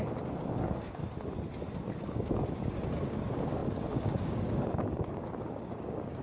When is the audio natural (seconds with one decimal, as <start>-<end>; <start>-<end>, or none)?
1.0-2.0